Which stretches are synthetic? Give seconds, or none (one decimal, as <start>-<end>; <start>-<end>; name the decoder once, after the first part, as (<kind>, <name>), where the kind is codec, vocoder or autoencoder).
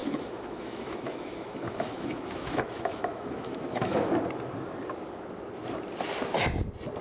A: 0.0-4.2 (autoencoder, DAC-VAE)